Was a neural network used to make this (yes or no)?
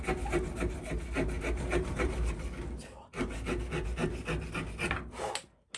no